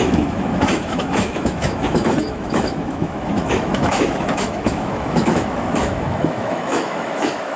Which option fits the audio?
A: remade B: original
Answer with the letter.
A